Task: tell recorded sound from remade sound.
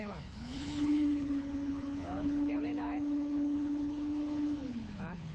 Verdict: remade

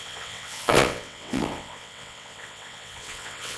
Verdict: remade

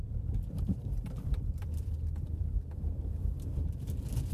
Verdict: remade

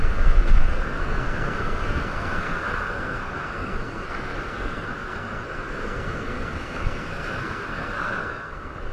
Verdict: remade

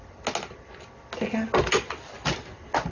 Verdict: recorded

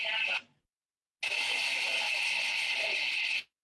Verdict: recorded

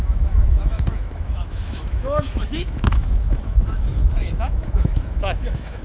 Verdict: remade